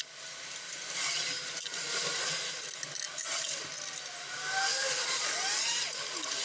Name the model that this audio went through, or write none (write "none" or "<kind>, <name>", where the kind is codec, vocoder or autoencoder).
none